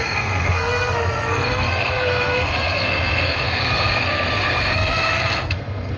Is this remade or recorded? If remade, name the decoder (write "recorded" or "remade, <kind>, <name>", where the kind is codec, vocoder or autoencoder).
remade, codec, SNAC